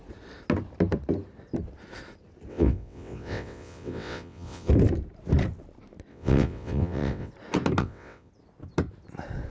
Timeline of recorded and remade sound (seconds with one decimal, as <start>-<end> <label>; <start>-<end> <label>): 0.0-2.5 recorded; 2.5-4.7 remade; 4.7-6.1 recorded; 6.1-7.3 remade; 7.3-7.8 recorded; 7.8-8.3 remade; 8.3-9.5 recorded